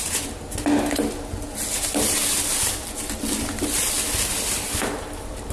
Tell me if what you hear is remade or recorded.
recorded